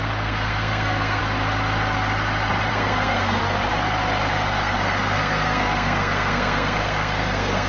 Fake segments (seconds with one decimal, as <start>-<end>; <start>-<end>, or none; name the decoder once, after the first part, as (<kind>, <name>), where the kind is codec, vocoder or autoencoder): 0.0-1.2 (codec, SNAC); 2.7-3.4; 4.3-7.7